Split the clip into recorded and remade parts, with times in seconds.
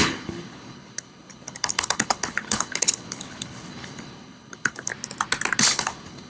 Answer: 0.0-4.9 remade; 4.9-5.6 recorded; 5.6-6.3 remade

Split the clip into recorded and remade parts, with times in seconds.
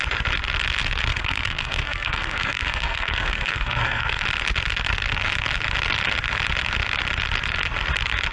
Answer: 0.0-1.1 recorded; 1.1-4.2 remade; 4.2-8.3 recorded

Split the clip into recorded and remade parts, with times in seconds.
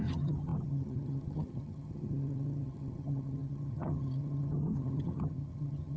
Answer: 0.0-6.0 remade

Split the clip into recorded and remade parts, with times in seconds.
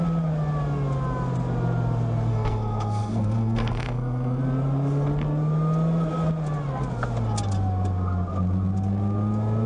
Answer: 0.0-2.3 recorded; 2.3-4.4 remade; 4.4-9.7 recorded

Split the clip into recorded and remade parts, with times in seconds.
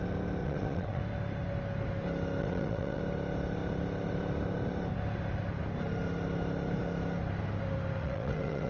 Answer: 0.0-0.4 recorded; 0.4-1.0 remade; 1.0-2.4 recorded; 2.4-3.0 remade; 3.0-8.0 recorded; 8.0-8.7 remade